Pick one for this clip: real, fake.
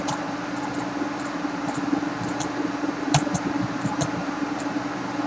fake